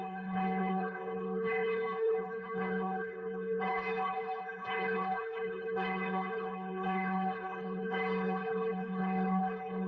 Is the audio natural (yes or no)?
no